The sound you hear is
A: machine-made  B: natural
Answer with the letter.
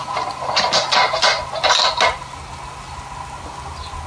B